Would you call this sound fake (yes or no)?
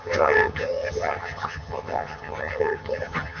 yes